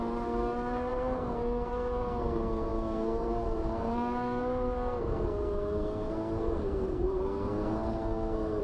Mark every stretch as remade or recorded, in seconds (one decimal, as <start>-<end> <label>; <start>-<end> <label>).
0.0-8.6 remade

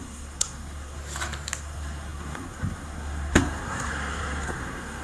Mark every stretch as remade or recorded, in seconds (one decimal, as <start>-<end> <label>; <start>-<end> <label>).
0.0-1.0 remade; 1.0-1.6 recorded; 1.6-5.0 remade

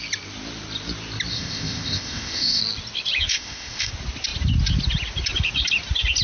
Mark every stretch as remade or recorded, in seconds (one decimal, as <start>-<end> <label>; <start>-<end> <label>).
0.0-1.3 recorded; 1.3-2.6 remade; 2.6-3.3 recorded; 3.3-3.9 remade; 3.9-6.2 recorded

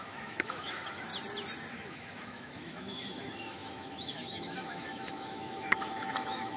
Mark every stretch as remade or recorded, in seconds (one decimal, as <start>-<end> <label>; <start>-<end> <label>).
0.0-1.1 remade; 1.1-1.7 recorded; 1.7-6.6 remade

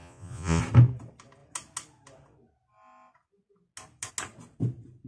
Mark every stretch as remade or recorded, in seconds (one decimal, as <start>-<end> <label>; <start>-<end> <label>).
0.0-0.6 remade; 0.6-5.1 recorded

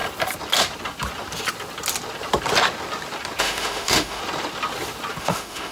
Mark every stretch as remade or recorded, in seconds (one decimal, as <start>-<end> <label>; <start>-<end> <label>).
0.0-3.4 recorded; 3.4-4.2 remade; 4.2-5.2 recorded; 5.2-5.7 remade

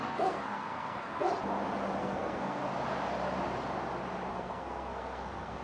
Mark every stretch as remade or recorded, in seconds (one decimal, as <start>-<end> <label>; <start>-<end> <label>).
0.0-1.3 remade; 1.3-2.0 recorded; 2.0-2.6 remade; 2.6-4.3 recorded; 4.3-5.6 remade